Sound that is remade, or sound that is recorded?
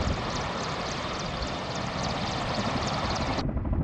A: remade